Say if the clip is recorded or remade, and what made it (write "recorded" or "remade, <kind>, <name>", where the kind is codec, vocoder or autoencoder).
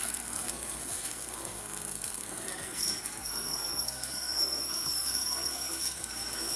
remade, codec, SNAC